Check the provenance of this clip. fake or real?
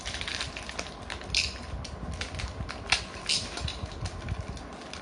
real